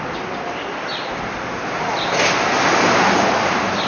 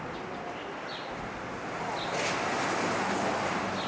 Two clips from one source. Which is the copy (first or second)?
first